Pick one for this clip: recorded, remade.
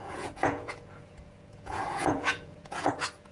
remade